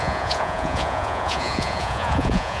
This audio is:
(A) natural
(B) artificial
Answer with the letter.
B